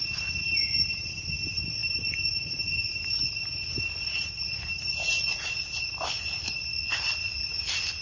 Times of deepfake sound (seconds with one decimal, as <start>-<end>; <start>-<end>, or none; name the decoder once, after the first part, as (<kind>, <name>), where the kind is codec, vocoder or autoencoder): none